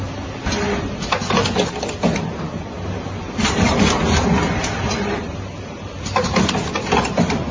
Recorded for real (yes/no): yes